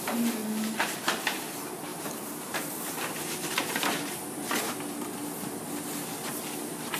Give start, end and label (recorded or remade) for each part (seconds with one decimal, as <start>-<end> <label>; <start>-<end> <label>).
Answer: 0.0-1.9 recorded; 1.9-4.0 remade; 4.0-7.0 recorded